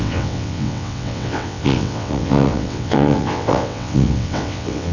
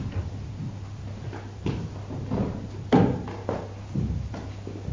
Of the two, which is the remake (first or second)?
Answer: first